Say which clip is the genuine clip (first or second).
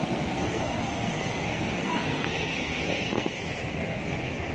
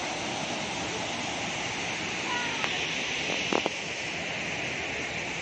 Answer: second